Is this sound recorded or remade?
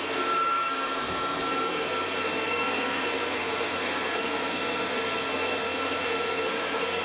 remade